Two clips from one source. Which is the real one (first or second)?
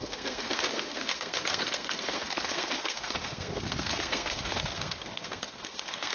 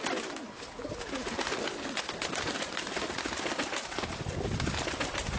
second